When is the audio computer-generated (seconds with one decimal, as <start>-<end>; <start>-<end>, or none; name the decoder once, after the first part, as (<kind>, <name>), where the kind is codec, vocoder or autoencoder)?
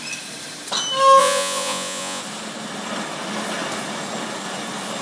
1.2-2.2 (vocoder, Vocos)